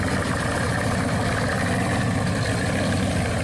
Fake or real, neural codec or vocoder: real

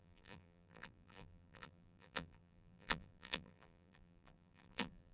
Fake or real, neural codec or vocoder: fake, vocoder, BigVGAN v2